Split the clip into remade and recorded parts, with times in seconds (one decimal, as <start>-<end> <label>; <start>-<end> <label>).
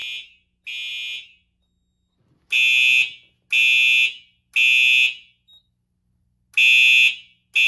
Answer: 0.0-7.7 recorded